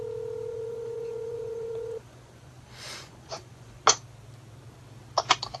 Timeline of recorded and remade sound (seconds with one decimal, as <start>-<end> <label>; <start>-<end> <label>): 0.0-0.5 recorded; 0.5-3.8 remade; 3.8-5.6 recorded